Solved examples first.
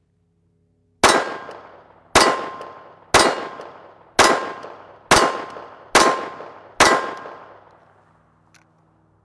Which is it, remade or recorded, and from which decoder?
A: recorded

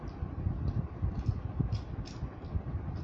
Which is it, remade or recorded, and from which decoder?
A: recorded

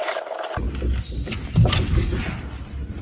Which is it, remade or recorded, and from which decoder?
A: recorded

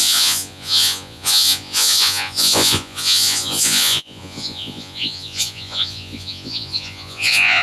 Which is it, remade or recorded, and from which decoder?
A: remade, vocoder, Vocos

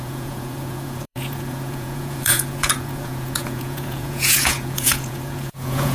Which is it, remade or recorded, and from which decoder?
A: remade, vocoder, Vocos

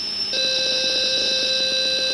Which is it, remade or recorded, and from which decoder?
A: recorded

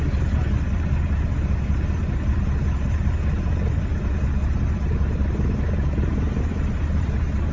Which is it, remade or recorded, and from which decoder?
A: remade, vocoder, BigVGAN v2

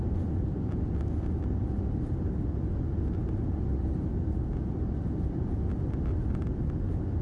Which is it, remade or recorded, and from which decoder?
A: recorded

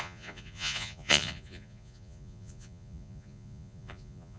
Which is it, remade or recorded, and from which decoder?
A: remade, vocoder, Vocos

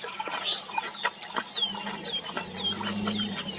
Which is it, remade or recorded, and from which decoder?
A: recorded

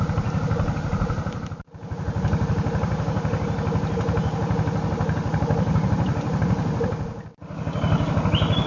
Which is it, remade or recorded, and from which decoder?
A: recorded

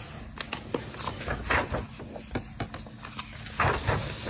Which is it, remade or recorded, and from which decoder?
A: recorded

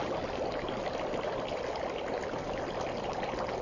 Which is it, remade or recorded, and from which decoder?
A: recorded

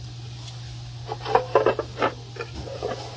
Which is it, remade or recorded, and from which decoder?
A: recorded